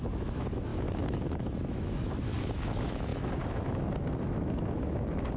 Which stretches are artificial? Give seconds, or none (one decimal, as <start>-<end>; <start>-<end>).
0.0-5.4